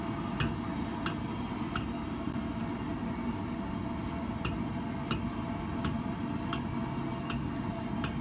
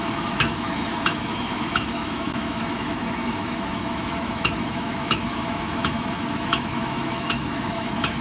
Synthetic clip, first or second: second